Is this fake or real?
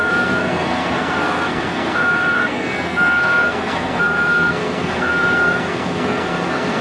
fake